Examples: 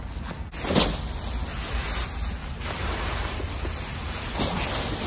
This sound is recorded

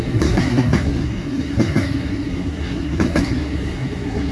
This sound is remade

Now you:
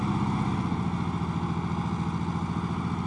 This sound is recorded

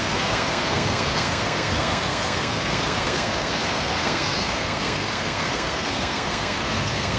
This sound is remade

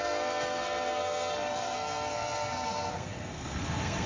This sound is remade